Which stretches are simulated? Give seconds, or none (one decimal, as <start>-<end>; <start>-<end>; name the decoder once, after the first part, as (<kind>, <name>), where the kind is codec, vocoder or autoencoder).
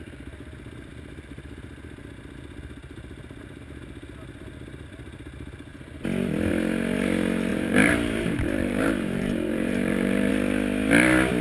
7.5-10.3 (vocoder, BigVGAN v2)